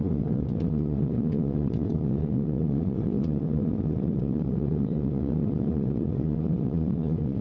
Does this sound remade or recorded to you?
remade